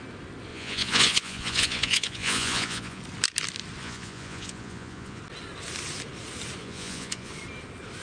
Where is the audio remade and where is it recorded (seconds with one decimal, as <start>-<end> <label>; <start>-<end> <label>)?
0.0-0.5 recorded; 0.5-3.0 remade; 3.0-3.8 recorded; 3.8-5.2 remade; 5.2-6.6 recorded; 6.6-7.3 remade; 7.3-8.0 recorded